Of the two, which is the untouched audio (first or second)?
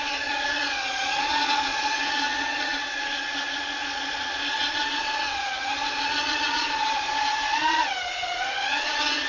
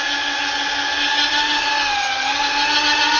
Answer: second